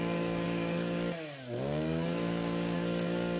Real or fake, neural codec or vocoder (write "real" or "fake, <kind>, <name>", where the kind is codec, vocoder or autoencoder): fake, codec, DAC